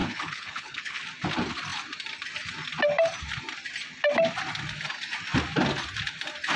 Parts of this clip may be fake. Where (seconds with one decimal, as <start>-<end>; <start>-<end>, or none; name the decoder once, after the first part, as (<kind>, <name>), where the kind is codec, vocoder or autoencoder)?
0.0-1.0 (codec, HILCodec)